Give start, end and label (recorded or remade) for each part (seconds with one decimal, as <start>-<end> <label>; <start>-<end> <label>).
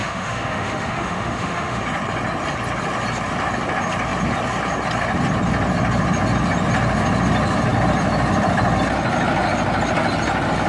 0.0-1.8 remade; 1.8-10.7 recorded